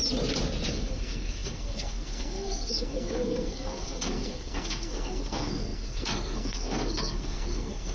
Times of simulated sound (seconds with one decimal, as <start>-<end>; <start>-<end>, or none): 0.7-7.9